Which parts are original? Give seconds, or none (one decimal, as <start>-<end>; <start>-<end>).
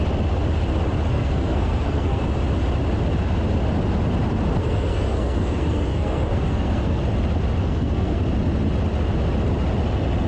0.0-1.1; 2.2-4.6; 7.0-7.6; 8.2-10.3